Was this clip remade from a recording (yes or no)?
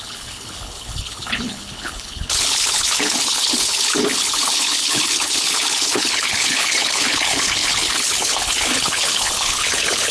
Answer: yes